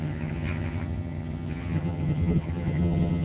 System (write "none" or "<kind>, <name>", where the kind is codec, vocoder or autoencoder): vocoder, HiFi-GAN